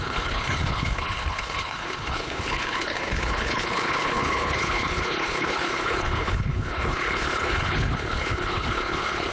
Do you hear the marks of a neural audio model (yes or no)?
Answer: yes